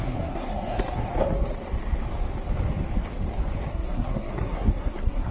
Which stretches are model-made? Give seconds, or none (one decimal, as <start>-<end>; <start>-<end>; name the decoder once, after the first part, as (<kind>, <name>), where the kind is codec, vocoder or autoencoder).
0.0-1.1 (codec, SNAC); 3.7-5.3